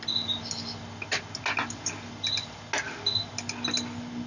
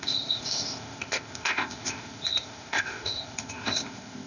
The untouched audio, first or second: first